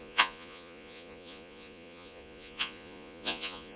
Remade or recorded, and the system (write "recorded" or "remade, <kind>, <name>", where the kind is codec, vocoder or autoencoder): remade, vocoder, Vocos